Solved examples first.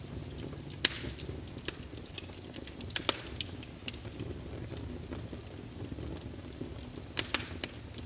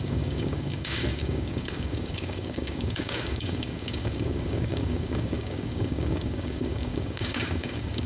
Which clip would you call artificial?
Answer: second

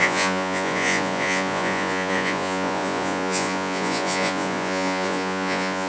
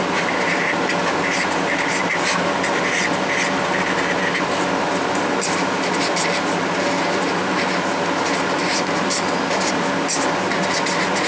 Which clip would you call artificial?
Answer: first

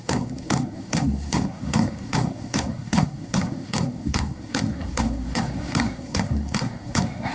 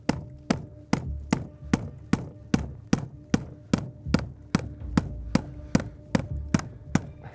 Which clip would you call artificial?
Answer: first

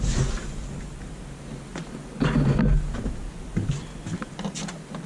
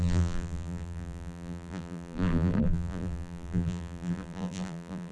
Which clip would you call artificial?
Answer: second